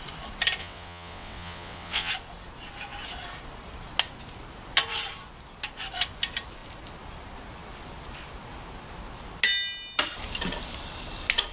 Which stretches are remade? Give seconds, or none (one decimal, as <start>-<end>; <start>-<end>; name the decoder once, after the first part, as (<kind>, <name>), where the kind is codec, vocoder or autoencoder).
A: 0.6-2.1 (vocoder, WaveNeXt)